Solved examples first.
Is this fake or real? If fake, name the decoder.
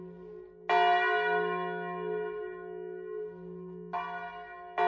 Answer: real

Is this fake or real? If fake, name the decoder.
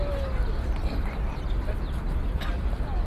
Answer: real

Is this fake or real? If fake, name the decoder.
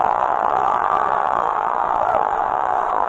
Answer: fake, vocoder, Vocos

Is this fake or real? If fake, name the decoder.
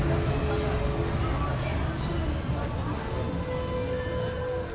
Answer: real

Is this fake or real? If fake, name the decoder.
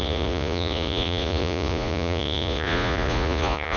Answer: fake, vocoder, Vocos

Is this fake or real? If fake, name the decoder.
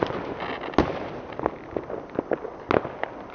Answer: real